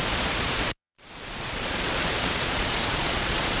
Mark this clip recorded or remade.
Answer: remade